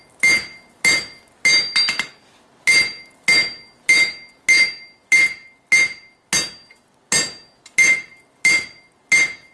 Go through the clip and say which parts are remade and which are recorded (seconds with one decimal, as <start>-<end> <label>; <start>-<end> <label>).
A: 0.0-9.5 recorded